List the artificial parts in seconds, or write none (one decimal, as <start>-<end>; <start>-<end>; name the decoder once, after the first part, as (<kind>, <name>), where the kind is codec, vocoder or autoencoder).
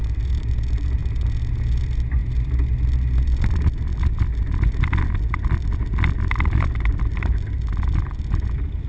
none